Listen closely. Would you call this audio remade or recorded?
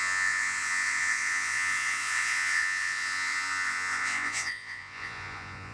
remade